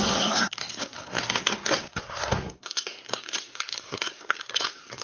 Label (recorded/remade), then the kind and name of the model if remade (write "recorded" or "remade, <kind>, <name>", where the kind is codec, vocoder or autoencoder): remade, codec, SNAC